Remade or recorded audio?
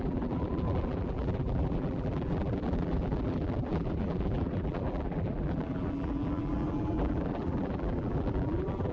remade